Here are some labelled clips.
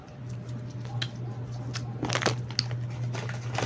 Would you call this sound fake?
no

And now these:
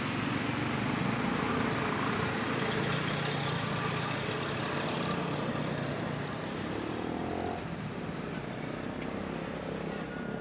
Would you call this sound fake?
no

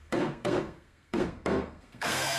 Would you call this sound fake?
yes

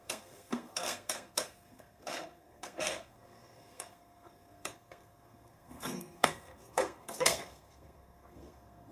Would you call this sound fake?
yes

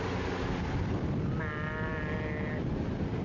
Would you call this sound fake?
no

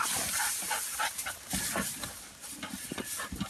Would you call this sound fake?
no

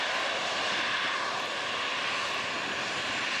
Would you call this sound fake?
no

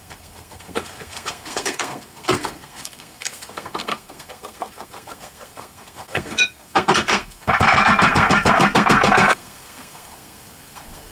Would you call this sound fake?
yes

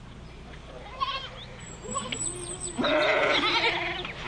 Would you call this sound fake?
no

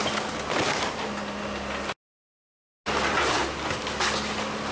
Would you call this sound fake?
no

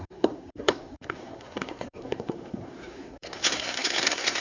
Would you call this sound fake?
yes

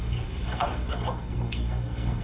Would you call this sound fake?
yes